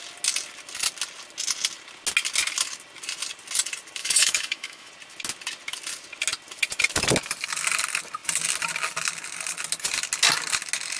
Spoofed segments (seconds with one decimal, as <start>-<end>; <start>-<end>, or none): 4.0-4.9